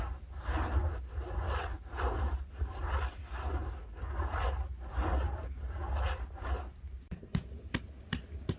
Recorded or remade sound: recorded